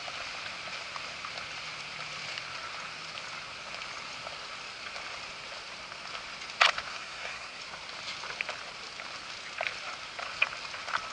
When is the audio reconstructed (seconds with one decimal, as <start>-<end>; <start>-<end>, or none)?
6.9-7.6